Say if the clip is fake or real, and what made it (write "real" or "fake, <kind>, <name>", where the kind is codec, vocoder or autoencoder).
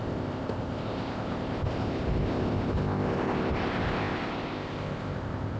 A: fake, codec, ZipCodec